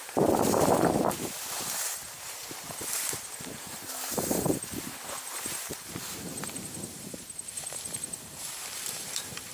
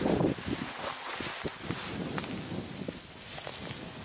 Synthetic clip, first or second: first